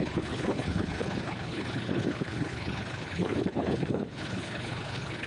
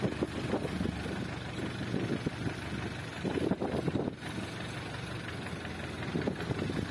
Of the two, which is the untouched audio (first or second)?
second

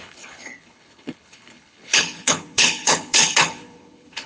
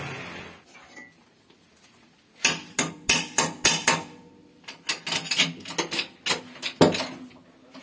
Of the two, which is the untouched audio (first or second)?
second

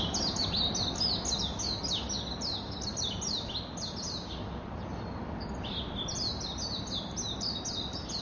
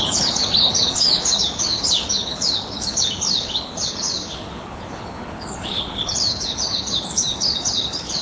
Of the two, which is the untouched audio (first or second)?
first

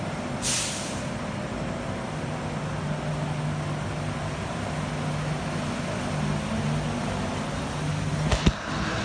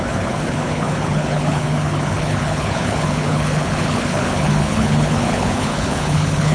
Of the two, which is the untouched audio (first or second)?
first